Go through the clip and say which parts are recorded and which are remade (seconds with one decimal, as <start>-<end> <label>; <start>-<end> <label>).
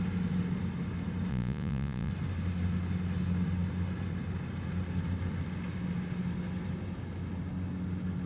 0.0-1.3 recorded; 1.3-2.1 remade; 2.1-8.3 recorded